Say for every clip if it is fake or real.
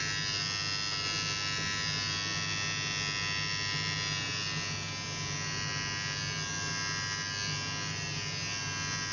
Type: real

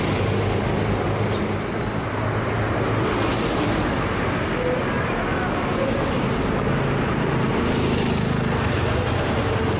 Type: real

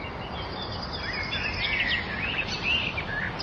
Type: real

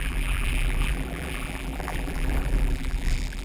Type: fake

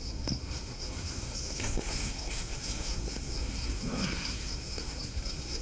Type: fake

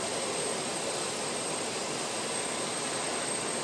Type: real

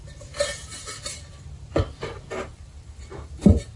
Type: fake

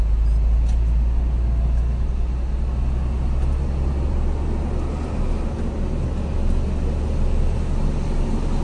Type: real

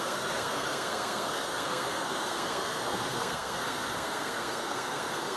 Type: fake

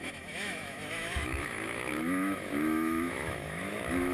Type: fake